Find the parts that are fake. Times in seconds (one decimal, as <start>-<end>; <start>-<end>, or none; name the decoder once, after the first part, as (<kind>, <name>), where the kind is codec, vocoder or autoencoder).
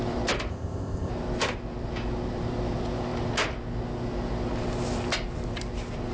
0.5-1.1 (codec, ZipCodec)